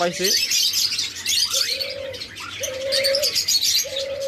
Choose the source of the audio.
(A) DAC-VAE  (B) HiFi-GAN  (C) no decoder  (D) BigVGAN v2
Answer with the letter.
C